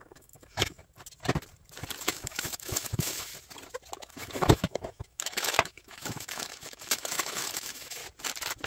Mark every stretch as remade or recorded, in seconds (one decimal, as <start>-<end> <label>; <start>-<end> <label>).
0.0-0.8 remade; 0.8-2.0 recorded; 2.0-3.3 remade; 3.3-4.0 recorded; 4.0-8.0 remade; 8.0-8.7 recorded